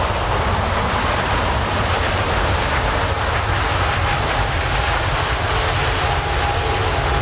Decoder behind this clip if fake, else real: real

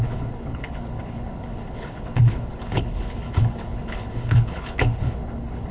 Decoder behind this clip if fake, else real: fake, codec, HILCodec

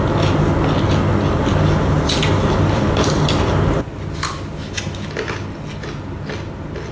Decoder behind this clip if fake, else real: real